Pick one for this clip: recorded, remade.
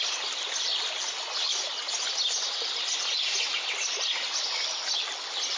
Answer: recorded